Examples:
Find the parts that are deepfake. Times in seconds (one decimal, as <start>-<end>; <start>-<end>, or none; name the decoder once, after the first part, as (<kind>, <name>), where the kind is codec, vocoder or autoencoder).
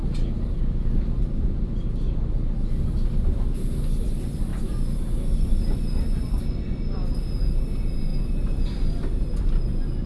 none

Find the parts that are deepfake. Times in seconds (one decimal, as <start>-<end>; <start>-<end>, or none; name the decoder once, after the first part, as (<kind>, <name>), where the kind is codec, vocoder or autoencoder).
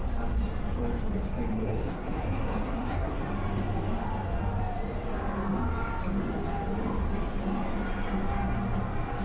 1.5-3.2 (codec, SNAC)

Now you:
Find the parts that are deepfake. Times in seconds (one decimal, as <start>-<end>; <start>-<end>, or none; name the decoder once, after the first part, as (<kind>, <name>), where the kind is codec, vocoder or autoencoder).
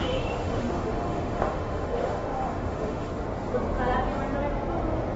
0.0-3.1 (autoencoder, DAC-VAE)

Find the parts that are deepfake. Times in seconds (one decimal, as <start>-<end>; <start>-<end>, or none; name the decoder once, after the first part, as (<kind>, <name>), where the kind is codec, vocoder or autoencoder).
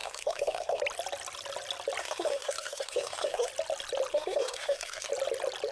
0.0-0.8 (codec, SNAC); 2.0-3.5; 4.1-5.1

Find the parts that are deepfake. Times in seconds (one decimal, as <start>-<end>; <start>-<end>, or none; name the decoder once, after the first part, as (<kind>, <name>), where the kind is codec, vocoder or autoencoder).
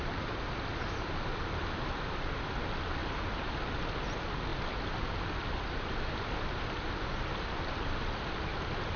none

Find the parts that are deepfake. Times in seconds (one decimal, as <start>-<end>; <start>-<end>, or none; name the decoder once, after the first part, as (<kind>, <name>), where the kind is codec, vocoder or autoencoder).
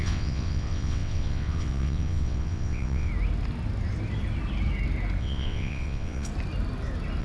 0.0-3.1 (vocoder, WaveNeXt); 5.2-6.3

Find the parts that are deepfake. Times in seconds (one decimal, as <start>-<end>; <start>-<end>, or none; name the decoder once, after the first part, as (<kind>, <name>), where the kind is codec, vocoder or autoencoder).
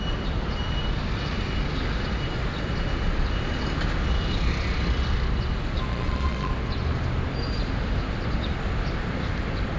5.9-6.5 (vocoder, Vocos)